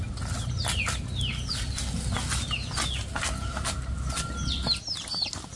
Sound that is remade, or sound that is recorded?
recorded